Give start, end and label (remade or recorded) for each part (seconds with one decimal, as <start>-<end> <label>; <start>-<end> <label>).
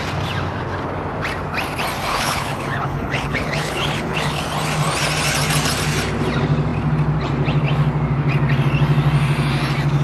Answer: 0.0-2.1 recorded; 2.1-4.4 remade; 4.4-10.0 recorded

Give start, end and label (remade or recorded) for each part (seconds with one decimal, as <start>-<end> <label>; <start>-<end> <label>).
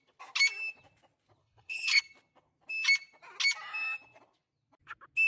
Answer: 0.0-1.4 recorded; 1.4-2.0 remade; 2.0-5.3 recorded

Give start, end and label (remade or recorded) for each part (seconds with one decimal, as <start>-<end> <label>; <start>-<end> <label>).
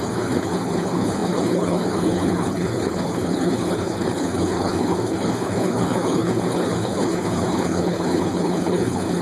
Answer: 0.0-9.2 remade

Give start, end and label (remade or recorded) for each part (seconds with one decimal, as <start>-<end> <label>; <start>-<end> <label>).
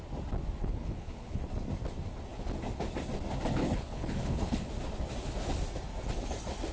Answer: 0.0-0.6 recorded; 0.6-1.4 remade; 1.4-3.6 recorded; 3.6-4.7 remade; 4.7-6.7 recorded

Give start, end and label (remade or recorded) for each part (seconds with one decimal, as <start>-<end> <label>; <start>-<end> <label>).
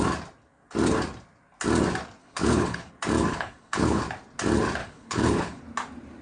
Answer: 0.0-2.2 recorded; 2.2-2.9 remade; 2.9-3.3 recorded; 3.3-4.0 remade; 4.0-4.8 recorded; 4.8-5.6 remade; 5.6-6.2 recorded